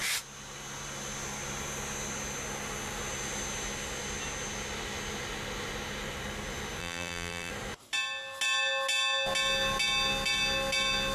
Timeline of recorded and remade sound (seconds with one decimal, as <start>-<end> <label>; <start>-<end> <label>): 0.0-6.8 recorded; 6.8-7.5 remade; 7.5-11.1 recorded